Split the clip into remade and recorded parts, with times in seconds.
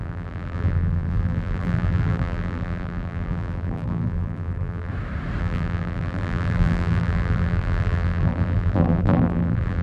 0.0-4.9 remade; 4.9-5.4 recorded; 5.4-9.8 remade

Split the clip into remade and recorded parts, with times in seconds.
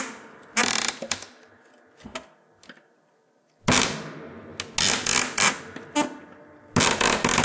0.0-0.6 recorded; 0.6-1.5 remade; 1.5-7.4 recorded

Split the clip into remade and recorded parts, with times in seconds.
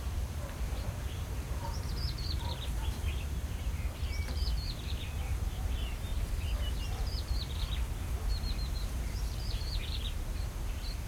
0.0-6.1 remade; 6.1-6.8 recorded; 6.8-11.1 remade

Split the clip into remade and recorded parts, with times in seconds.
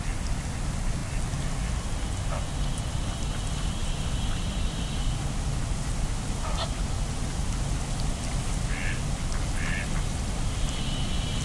0.0-11.4 recorded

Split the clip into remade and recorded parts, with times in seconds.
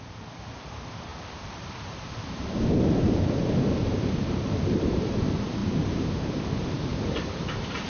0.0-7.9 remade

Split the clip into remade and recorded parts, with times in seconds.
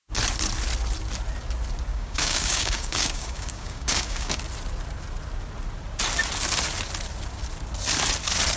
0.0-1.9 recorded; 1.9-4.4 remade; 4.4-8.6 recorded